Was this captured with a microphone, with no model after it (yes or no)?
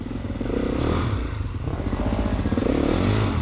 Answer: yes